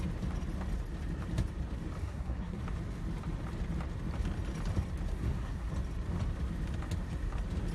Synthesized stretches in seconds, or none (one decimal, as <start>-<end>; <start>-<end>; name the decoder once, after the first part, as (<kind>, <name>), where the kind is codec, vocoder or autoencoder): 2.0-2.6 (codec, SNAC); 5.1-5.7